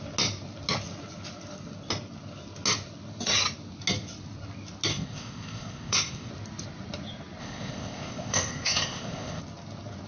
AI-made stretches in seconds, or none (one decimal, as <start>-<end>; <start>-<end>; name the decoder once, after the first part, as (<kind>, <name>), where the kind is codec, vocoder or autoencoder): 4.9-6.3 (codec, ZipCodec); 7.4-9.4